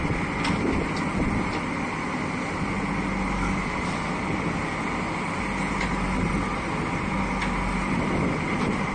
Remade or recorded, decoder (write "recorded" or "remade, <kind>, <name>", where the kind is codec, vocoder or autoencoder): recorded